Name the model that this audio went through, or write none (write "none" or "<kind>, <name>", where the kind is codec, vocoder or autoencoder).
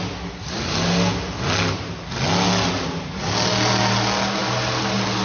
none